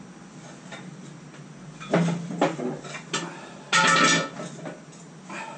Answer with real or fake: real